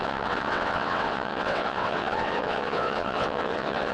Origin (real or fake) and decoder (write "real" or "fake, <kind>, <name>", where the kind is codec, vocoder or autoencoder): fake, vocoder, WaveNeXt